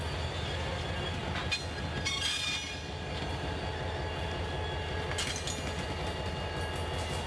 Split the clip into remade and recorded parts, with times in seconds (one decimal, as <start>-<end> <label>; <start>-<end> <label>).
0.0-7.3 recorded